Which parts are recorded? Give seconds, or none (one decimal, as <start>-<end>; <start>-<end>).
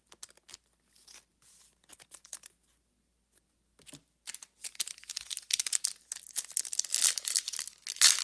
0.0-8.2